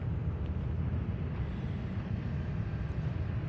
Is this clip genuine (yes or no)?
yes